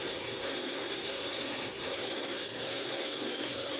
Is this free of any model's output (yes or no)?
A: no